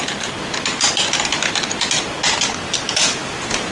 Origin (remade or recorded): recorded